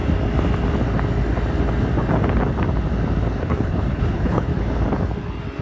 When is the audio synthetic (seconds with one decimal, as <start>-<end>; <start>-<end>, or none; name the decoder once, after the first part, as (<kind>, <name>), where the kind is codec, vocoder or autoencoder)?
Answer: 3.4-4.5 (codec, HILCodec)